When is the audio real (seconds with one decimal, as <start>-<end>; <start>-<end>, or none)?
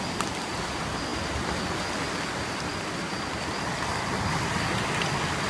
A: 0.0-5.5